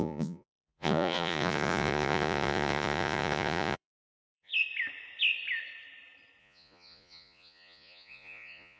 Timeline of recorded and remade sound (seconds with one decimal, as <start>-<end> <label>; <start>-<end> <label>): 0.0-4.5 remade; 4.5-6.4 recorded; 6.4-8.8 remade